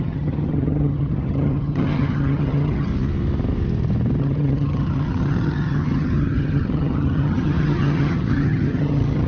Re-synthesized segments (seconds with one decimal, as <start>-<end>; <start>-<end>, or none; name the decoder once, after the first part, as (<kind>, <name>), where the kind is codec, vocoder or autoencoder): 0.0-2.9 (vocoder, HiFi-GAN); 4.2-9.3